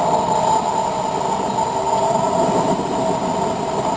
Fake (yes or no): no